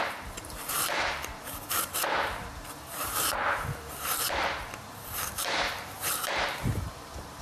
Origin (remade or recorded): remade